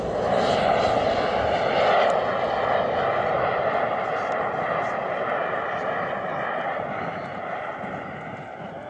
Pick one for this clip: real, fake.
real